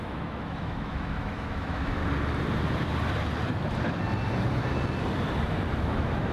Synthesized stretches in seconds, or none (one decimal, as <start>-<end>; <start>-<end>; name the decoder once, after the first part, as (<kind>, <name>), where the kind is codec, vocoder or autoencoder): 0.0-2.0 (autoencoder, DAC-VAE); 5.8-6.3